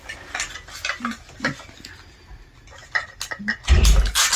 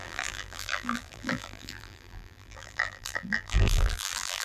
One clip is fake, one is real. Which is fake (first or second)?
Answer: second